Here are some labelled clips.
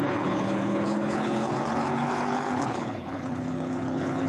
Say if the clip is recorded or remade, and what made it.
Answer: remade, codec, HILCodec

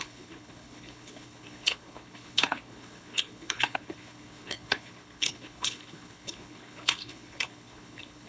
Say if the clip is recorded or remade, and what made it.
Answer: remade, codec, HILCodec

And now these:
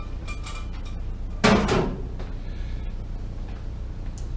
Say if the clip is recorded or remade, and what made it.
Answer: recorded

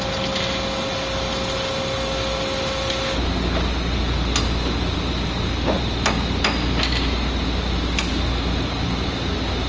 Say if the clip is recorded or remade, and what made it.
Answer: recorded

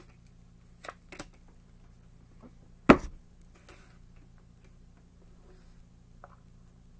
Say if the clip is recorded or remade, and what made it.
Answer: recorded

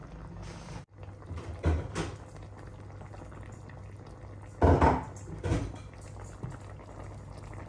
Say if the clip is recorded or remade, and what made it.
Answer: recorded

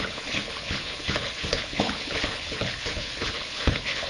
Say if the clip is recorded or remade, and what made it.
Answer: remade, codec, HILCodec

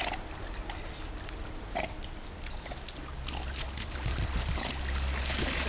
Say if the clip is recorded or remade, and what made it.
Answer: recorded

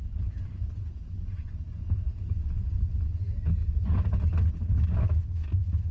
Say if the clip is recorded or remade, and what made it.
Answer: recorded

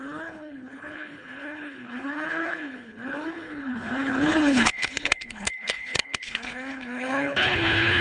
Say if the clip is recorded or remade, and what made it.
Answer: remade, codec, HILCodec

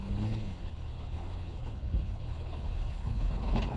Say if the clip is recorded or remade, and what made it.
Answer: remade, codec, HILCodec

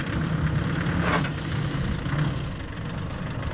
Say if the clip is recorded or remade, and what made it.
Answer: recorded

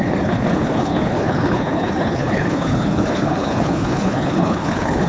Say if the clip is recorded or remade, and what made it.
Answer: remade, codec, HILCodec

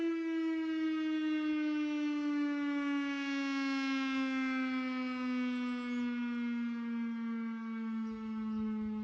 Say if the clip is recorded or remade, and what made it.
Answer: recorded